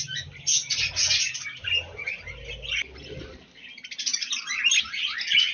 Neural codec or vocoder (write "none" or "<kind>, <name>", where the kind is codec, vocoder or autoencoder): none